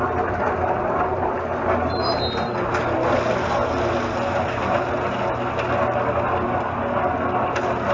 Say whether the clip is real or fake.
real